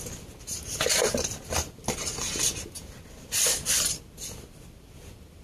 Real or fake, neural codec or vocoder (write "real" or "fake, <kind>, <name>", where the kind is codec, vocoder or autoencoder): real